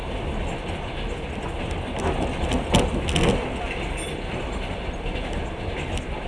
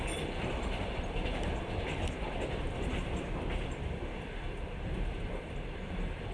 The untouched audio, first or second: first